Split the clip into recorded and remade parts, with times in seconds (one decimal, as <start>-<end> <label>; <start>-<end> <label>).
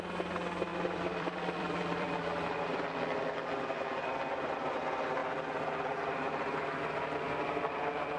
0.0-0.7 recorded; 0.7-4.7 remade; 4.7-5.2 recorded; 5.2-8.2 remade